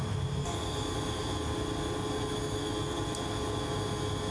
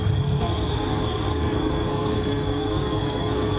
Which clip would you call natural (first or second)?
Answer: first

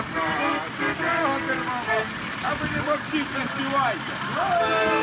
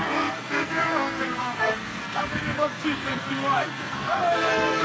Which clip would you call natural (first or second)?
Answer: first